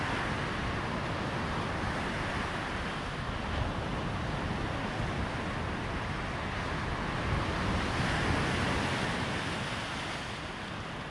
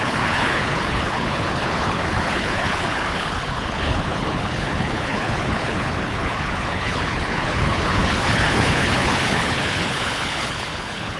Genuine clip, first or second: first